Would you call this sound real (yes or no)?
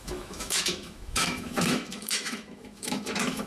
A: no